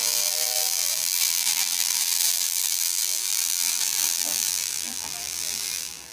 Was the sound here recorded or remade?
remade